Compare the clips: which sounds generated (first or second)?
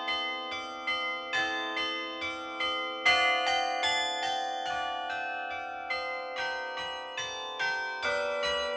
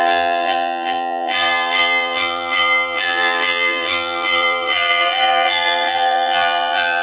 second